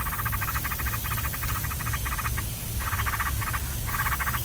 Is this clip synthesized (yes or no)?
no